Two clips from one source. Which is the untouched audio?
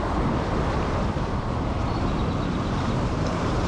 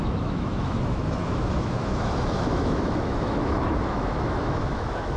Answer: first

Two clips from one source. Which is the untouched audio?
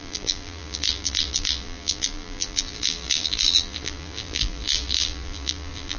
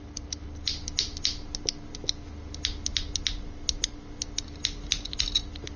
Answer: second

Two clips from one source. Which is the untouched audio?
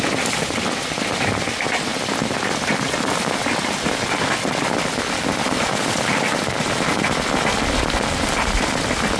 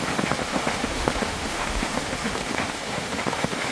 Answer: first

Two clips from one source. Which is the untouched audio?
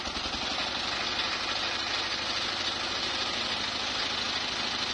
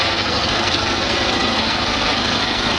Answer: first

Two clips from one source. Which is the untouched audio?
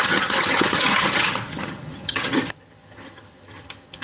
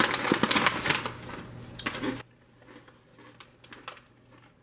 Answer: second